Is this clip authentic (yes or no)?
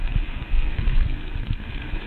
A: no